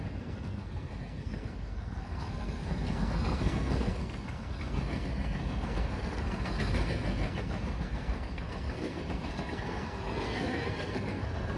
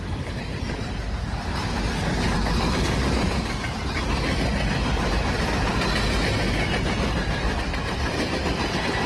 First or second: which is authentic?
second